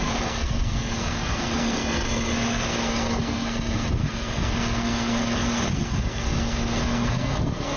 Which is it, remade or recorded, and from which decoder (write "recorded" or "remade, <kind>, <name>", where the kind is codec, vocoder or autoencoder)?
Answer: remade, codec, SNAC